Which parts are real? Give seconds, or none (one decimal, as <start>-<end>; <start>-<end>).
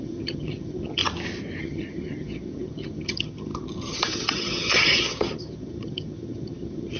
1.0-1.6